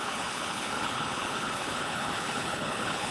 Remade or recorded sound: remade